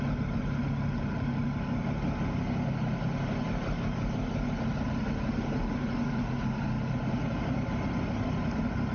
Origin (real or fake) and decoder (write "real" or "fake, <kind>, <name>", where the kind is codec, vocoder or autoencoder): real